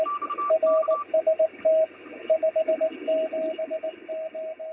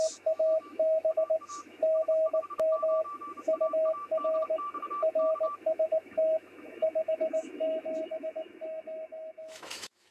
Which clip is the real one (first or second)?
first